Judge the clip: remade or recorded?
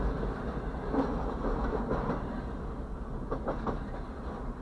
recorded